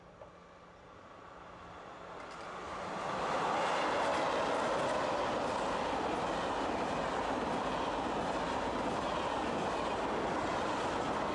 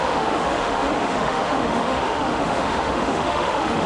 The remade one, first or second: second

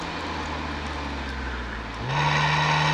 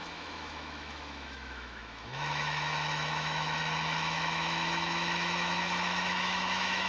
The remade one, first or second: second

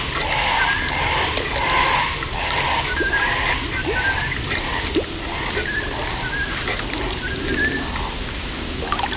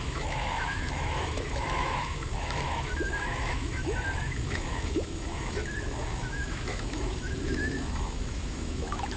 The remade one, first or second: second